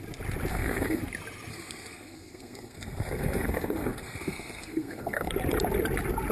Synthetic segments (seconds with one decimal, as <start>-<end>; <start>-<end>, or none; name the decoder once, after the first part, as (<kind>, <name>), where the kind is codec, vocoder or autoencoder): 0.5-1.0 (codec, SNAC); 1.5-5.3